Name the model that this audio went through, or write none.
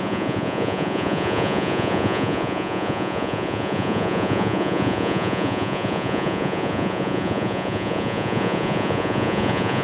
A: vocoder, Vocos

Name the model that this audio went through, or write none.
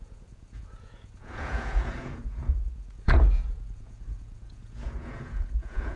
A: vocoder, Vocos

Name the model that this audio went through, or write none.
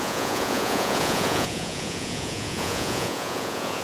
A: vocoder, Vocos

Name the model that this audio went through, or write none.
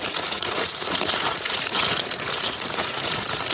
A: vocoder, Vocos